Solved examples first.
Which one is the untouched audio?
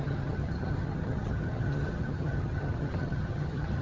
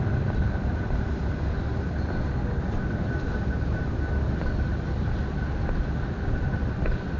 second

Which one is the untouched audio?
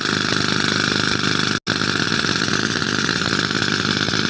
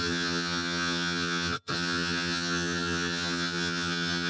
first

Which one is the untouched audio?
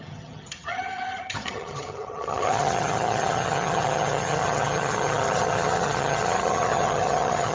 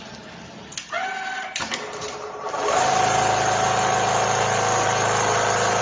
second